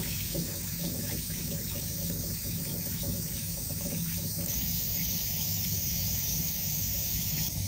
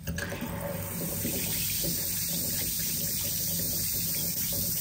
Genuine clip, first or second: second